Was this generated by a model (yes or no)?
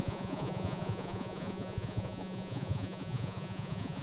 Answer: yes